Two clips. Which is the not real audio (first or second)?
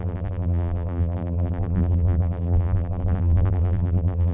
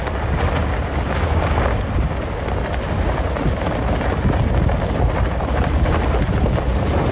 first